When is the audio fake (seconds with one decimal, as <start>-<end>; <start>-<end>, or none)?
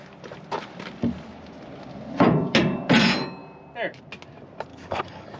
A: 4.7-5.4